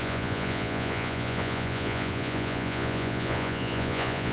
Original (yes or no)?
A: no